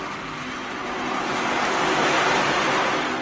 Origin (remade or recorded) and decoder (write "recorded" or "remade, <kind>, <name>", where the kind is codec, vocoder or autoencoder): recorded